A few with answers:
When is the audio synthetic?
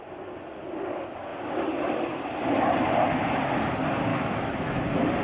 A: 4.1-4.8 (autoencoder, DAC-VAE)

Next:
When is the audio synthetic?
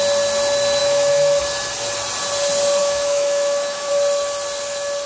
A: 0.8-1.4 (autoencoder, DAC-VAE); 2.8-3.9